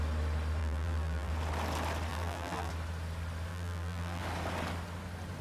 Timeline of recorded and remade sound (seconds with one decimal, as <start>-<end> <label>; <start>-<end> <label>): 0.0-0.6 recorded; 0.6-1.3 remade; 1.3-2.1 recorded; 2.1-2.7 remade; 2.7-3.5 recorded; 3.5-4.2 remade; 4.2-5.4 recorded